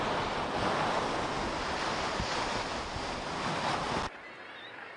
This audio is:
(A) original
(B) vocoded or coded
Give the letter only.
A